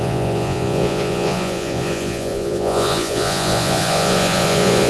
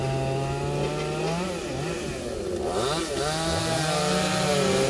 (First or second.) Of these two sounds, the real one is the second